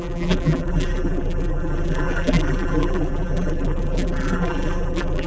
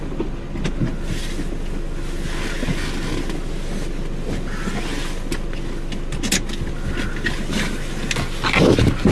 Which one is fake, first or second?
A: first